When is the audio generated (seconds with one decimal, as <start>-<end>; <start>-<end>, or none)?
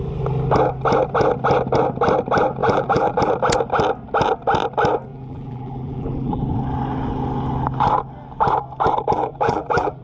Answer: 2.6-3.2; 5.1-6.4; 9.3-10.0